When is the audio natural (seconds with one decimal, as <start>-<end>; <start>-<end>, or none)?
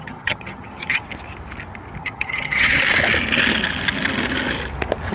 1.0-2.0; 2.8-5.1